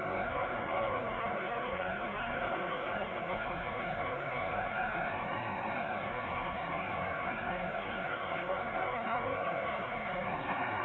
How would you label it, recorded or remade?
remade